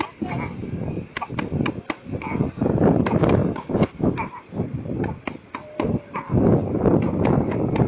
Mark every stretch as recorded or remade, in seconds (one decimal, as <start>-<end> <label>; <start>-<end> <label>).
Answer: 0.0-7.9 recorded